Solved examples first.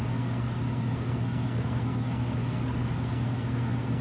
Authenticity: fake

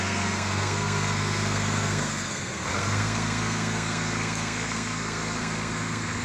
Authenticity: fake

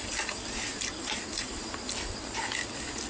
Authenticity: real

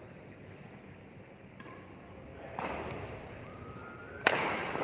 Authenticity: real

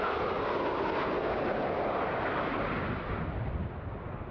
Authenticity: real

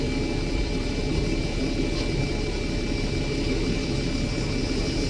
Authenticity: real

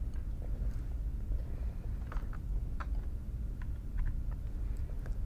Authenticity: real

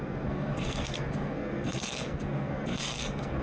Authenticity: fake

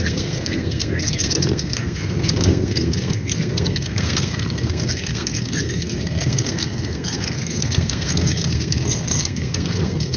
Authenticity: fake